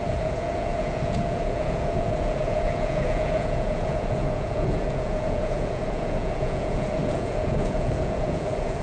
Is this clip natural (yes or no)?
no